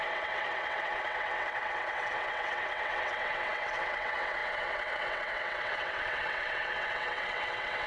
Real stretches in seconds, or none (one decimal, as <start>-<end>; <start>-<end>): none